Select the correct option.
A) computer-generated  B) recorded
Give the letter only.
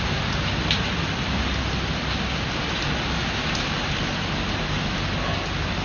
B